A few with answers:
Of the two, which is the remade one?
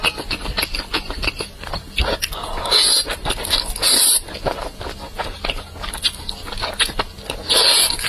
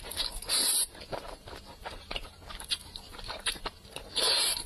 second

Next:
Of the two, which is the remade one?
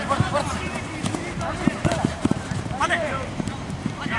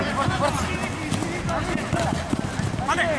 first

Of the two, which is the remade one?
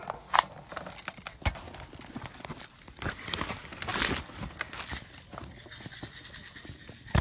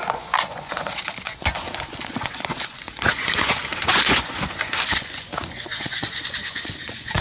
second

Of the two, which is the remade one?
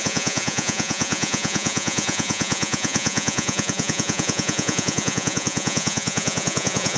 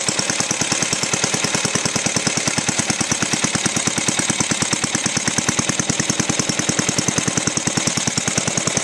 first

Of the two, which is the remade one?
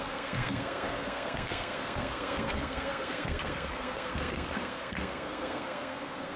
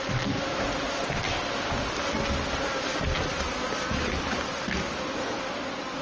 first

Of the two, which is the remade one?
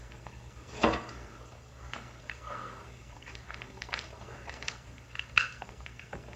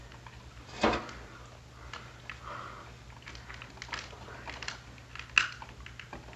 first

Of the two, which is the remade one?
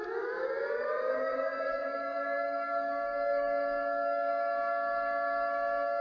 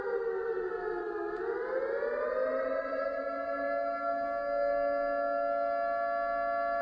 first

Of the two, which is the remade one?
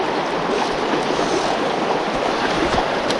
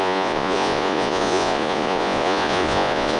second